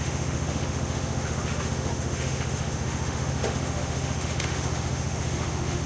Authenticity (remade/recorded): remade